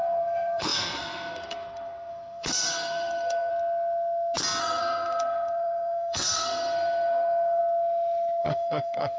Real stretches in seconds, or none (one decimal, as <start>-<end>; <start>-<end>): 3.5-4.6; 7.6-8.4

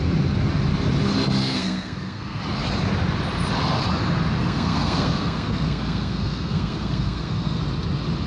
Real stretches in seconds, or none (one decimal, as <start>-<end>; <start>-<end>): 0.0-1.4; 2.4-4.4; 7.6-8.3

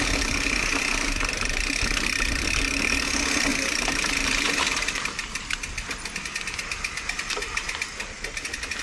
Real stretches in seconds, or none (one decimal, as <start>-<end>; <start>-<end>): 0.0-3.5; 5.6-8.8

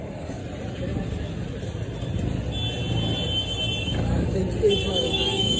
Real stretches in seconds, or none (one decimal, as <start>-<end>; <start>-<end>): 0.4-3.8; 4.4-4.9

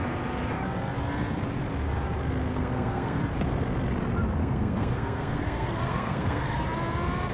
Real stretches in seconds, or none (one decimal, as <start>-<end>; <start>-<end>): 0.0-2.5; 3.2-4.4; 6.6-7.3

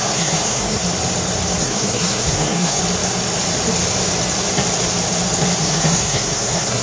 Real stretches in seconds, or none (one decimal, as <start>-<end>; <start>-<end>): 0.8-1.6; 2.8-5.6

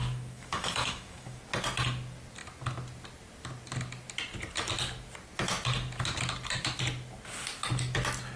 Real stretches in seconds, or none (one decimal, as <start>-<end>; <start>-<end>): 1.4-8.4

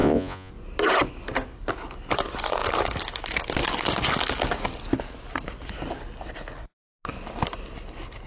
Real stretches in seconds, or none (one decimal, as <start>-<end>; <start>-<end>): 0.5-8.3